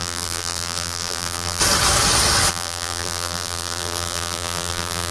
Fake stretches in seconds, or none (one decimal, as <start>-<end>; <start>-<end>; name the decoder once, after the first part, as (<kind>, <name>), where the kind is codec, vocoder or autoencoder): 0.0-1.6 (vocoder, BigVGAN v2); 2.5-5.1